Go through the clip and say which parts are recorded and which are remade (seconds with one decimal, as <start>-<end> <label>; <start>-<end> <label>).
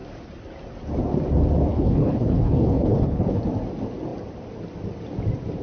0.0-1.7 recorded; 1.7-3.4 remade; 3.4-5.6 recorded